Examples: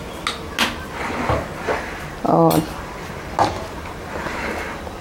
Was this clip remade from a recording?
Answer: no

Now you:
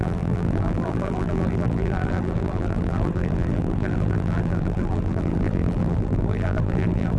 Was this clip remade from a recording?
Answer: yes